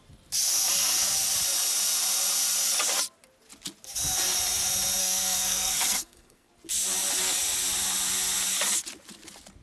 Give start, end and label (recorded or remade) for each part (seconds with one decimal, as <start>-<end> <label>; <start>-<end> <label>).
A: 0.0-5.0 recorded; 5.0-6.5 remade; 6.5-9.6 recorded